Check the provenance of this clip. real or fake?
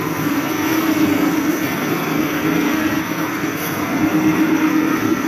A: fake